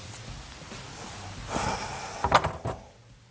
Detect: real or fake real